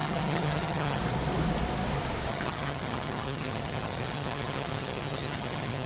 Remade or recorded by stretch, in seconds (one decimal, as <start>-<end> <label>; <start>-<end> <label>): 0.0-1.0 remade; 1.0-2.3 recorded; 2.3-5.9 remade